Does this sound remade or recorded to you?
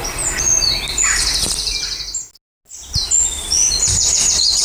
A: recorded